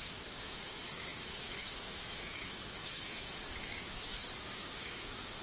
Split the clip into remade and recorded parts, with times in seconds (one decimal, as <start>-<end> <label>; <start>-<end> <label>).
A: 0.0-5.4 remade